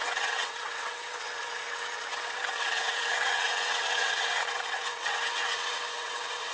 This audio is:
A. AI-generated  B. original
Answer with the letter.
A